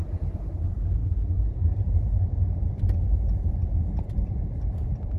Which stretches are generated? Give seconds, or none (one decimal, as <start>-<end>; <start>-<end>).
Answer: none